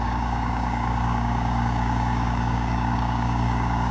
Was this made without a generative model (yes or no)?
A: no